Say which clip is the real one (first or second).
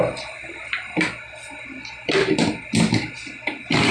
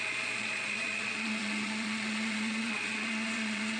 first